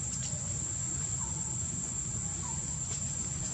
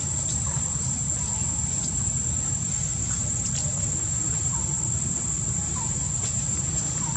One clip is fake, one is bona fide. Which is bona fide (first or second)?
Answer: second